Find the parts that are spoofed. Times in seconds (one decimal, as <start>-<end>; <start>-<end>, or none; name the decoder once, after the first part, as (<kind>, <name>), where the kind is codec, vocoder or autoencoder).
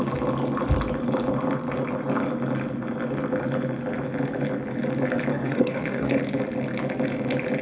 5.3-6.2 (codec, SNAC)